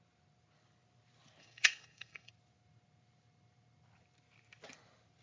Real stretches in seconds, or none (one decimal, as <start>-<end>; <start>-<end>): 0.0-1.4; 2.3-5.2